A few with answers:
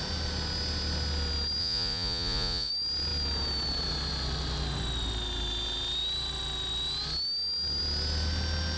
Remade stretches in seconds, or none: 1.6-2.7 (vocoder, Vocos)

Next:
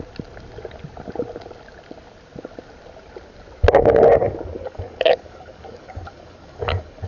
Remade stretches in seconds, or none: 3.8-7.1 (codec, DAC)

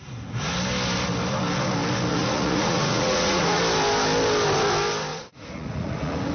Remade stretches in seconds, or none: 2.1-3.6 (vocoder, Vocos); 5.1-6.3

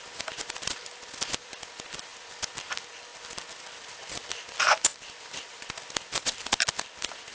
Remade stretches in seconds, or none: none

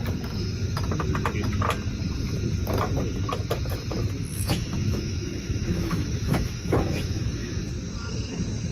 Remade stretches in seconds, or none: 4.3-7.6 (autoencoder, DAC-VAE)